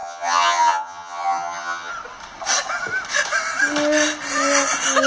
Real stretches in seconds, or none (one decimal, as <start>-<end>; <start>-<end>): 1.9-5.1